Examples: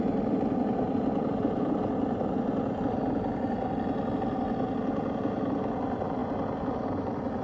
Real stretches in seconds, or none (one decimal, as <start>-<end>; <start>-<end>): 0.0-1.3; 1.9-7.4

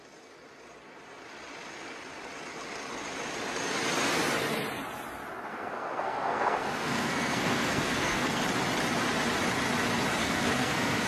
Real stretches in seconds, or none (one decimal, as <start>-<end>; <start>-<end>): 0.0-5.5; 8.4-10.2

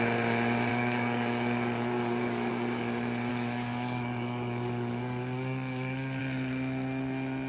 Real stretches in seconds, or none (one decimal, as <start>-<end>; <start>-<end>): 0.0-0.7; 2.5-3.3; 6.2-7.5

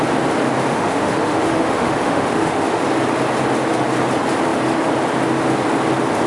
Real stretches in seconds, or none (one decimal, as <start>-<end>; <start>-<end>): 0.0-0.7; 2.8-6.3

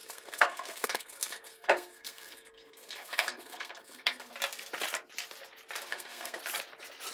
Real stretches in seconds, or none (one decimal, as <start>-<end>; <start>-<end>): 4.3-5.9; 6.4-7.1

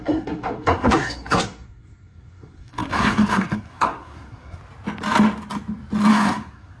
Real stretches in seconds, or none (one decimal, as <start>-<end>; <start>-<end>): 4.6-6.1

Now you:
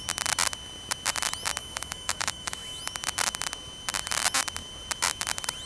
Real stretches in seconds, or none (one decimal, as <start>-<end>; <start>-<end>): 0.0-1.6; 2.8-5.7

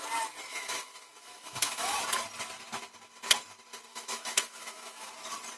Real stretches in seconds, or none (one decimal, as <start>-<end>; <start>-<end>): 0.0-0.5; 2.0-3.9; 5.1-5.6